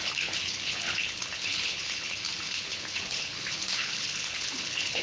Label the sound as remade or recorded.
remade